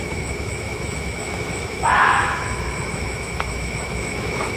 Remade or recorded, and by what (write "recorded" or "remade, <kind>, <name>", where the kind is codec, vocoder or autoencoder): remade, autoencoder, DAC-VAE